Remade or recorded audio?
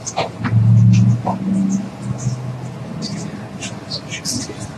recorded